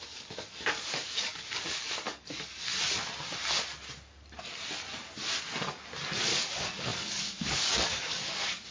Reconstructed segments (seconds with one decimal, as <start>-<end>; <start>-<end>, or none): 0.0-2.7; 6.2-8.7